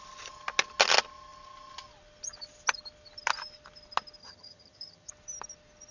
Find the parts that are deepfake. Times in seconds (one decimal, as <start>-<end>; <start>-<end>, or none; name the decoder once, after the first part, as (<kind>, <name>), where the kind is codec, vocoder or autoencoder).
4.2-5.1 (vocoder, HiFi-GAN)